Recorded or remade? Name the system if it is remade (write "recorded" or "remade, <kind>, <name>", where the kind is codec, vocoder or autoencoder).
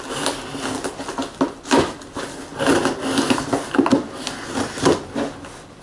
recorded